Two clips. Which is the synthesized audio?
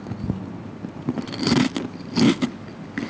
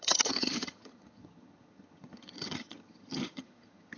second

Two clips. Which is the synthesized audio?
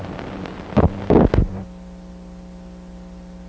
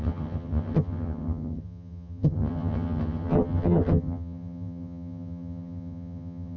second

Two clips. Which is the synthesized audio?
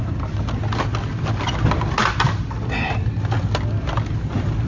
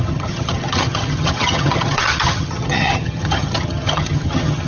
second